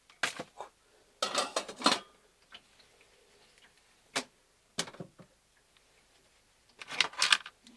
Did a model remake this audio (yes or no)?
no